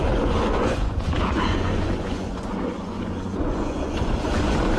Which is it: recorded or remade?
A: remade